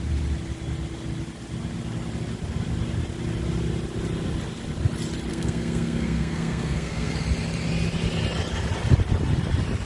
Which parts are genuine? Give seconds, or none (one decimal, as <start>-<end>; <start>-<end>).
0.0-5.3; 7.2-9.9